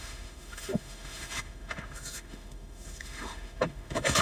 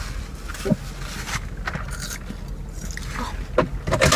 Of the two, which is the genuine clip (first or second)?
second